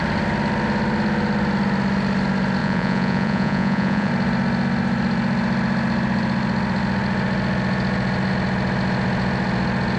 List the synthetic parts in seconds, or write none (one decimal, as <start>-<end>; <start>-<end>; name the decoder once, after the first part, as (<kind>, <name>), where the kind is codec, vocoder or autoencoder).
2.6-4.1 (vocoder, Vocos)